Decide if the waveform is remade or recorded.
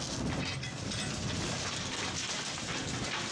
recorded